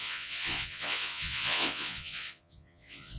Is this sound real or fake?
fake